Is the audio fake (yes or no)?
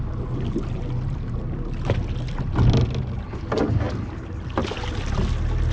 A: no